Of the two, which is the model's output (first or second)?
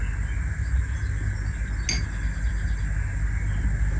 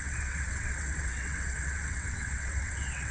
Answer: second